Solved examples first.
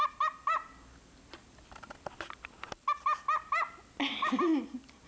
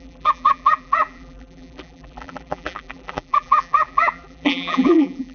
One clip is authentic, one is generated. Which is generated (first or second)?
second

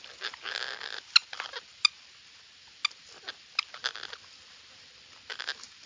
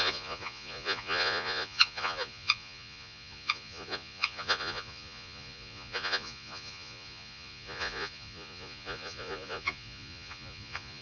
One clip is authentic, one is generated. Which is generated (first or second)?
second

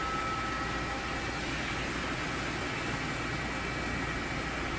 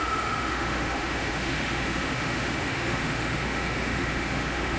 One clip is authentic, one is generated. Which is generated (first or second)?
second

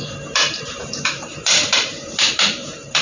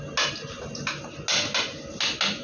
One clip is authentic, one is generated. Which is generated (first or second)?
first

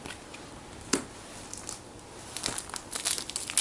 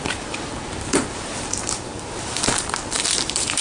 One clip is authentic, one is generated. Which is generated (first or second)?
second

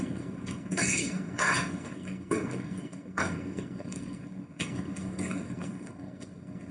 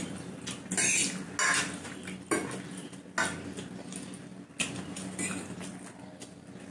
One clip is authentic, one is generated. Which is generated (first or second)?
first